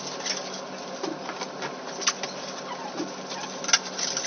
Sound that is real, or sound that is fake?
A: real